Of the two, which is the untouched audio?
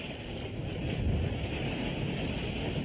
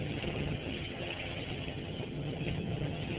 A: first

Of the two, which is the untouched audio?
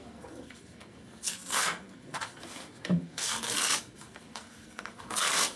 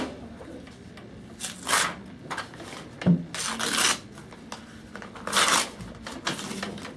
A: second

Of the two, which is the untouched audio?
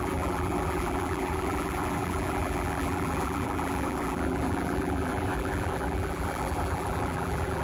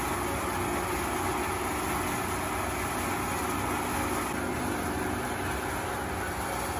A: second